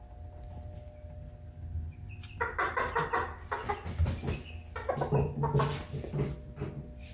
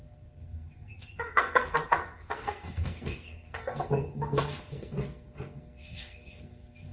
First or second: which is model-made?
second